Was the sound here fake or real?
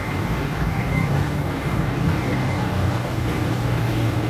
fake